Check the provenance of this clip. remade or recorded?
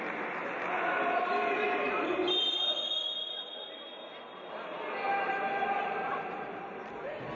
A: recorded